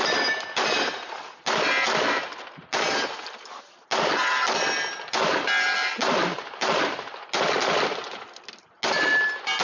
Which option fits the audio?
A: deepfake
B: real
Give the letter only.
B